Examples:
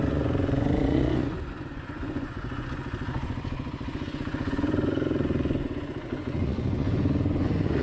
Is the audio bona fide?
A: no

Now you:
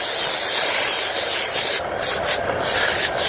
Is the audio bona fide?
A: yes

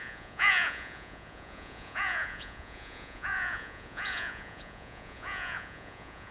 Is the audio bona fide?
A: no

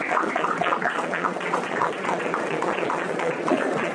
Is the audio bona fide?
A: no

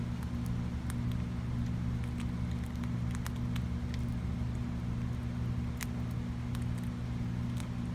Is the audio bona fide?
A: yes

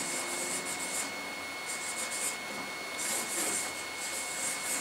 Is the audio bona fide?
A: yes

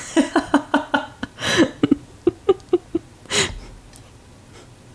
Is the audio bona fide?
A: yes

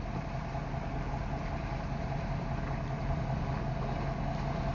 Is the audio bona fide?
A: yes